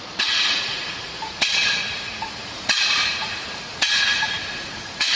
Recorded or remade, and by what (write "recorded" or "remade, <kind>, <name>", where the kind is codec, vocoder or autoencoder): remade, vocoder, Vocos